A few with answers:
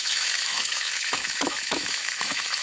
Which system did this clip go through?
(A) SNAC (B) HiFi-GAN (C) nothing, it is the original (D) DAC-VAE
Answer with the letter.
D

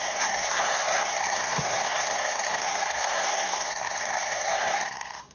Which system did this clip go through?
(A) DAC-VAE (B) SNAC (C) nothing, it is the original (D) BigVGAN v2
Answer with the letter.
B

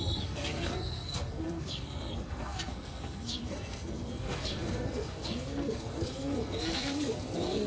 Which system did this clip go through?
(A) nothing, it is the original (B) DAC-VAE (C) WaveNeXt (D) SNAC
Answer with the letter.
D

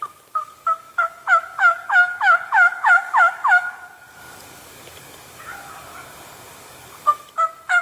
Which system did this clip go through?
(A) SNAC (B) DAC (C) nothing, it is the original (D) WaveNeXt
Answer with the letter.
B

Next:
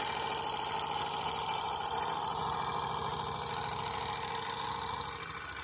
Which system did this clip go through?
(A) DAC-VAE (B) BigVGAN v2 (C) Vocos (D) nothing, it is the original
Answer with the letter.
D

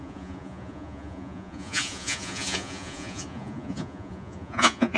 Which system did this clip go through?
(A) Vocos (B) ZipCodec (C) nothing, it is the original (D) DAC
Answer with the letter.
A